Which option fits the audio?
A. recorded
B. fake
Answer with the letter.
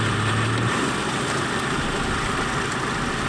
A